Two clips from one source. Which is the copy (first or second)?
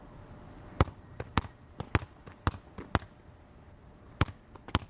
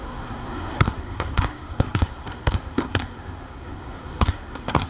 second